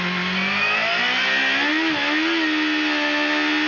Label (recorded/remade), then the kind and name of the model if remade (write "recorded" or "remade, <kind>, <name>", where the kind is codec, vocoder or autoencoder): recorded